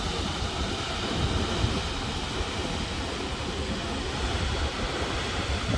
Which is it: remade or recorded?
recorded